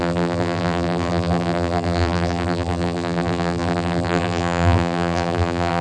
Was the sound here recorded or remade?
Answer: remade